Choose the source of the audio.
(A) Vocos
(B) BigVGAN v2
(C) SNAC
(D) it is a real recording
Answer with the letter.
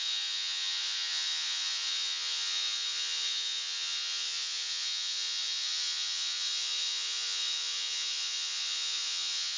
A